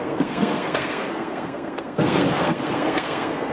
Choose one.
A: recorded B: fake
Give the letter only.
B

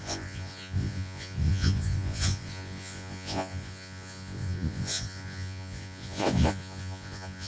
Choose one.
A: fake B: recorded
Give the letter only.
A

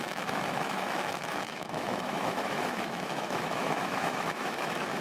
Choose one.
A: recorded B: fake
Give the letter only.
B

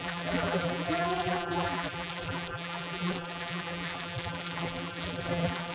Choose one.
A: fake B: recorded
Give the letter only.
A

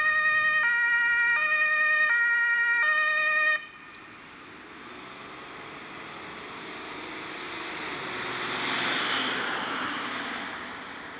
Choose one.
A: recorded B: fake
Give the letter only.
A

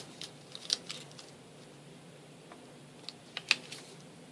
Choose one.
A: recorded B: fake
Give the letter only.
A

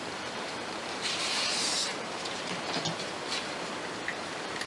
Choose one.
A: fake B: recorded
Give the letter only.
A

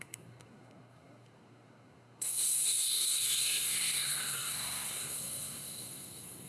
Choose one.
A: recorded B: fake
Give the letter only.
B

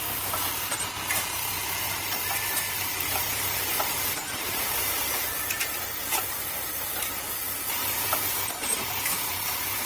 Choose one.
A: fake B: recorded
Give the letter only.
A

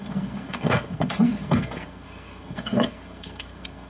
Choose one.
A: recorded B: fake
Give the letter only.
B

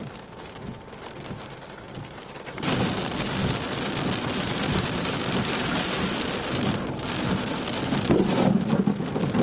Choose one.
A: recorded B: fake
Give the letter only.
B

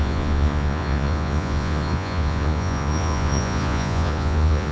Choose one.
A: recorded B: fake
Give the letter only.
B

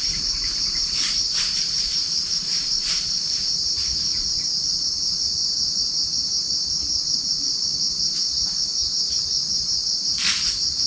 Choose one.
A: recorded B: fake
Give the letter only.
B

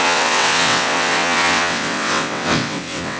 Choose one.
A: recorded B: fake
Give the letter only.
B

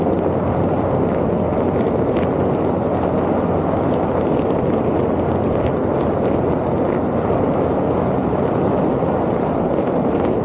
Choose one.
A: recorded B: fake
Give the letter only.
A